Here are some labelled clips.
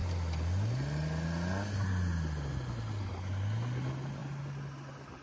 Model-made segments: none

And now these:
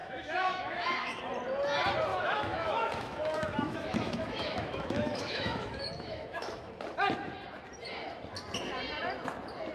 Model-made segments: 0.0-1.2; 2.1-6.7

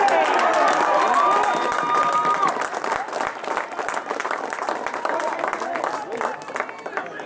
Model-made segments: none

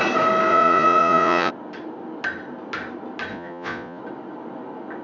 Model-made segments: 0.5-1.5; 3.3-4.0